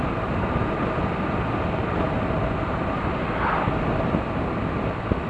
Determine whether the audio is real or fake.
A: real